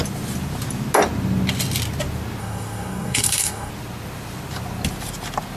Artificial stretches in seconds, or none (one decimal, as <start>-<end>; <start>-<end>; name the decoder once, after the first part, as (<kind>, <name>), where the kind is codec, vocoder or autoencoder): 2.4-3.7 (codec, DAC)